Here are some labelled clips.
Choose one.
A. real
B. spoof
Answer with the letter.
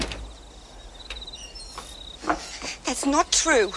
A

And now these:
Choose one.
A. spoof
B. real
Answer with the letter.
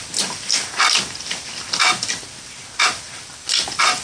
B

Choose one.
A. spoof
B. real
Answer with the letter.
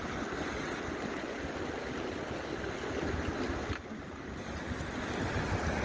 B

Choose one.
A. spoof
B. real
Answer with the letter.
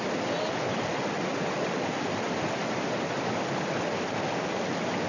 B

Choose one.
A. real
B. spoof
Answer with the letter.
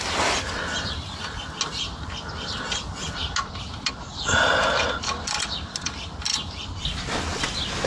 A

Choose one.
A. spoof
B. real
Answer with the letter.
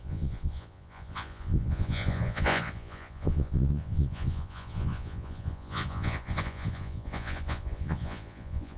A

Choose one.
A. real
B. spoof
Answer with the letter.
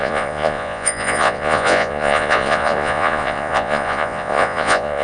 B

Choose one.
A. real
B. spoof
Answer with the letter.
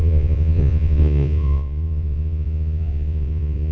B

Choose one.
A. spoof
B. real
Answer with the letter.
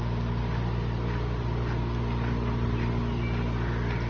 B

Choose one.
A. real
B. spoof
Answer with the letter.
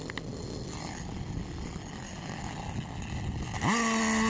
A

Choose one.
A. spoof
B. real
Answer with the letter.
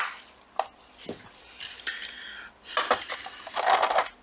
B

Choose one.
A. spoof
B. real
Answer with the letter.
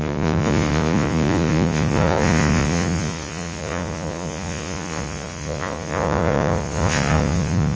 A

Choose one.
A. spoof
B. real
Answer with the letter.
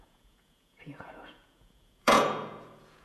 A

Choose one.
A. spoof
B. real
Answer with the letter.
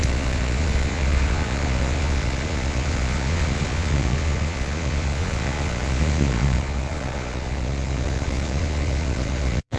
A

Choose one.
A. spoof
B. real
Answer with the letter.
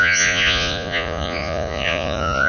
A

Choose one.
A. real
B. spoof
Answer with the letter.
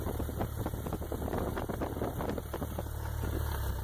A